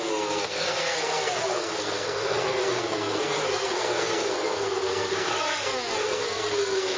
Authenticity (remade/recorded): remade